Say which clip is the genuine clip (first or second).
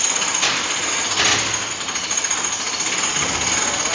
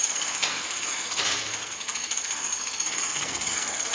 first